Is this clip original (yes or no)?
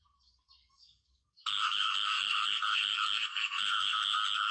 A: no